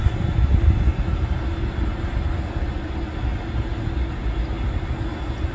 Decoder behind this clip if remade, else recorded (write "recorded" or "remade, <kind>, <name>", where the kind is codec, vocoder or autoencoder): recorded